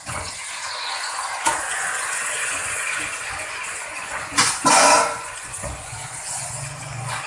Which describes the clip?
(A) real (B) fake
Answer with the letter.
B